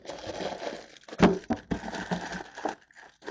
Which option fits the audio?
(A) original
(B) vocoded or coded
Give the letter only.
A